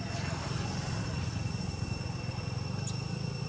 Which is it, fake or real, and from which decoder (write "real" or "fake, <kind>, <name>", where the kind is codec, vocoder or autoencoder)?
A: real